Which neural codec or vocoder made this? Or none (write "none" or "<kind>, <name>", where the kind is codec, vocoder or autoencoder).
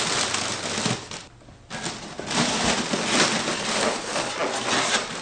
none